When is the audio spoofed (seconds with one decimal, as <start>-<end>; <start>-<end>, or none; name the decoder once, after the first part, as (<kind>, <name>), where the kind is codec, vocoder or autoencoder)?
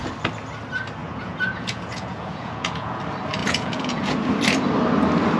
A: 1.0-3.0 (vocoder, Vocos); 3.4-4.1